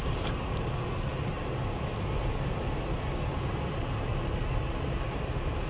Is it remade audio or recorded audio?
recorded